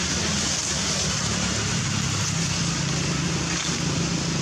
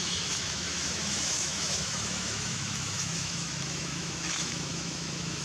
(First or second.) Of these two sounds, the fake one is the second